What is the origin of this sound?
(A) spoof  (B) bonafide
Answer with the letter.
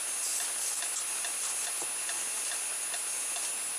B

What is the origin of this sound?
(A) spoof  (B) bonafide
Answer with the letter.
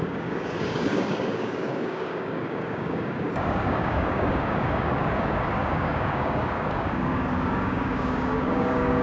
A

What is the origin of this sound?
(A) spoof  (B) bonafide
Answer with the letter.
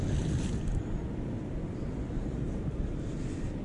B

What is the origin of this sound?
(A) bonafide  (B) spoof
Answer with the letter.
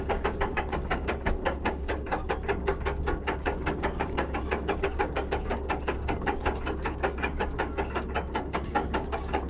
B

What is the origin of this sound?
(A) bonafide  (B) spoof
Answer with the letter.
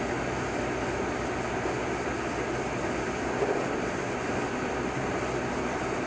A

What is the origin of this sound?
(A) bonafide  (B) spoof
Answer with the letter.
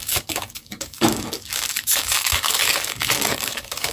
B